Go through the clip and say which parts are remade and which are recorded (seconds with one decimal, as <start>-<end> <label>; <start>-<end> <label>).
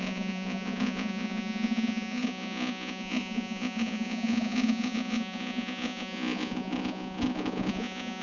0.0-8.2 remade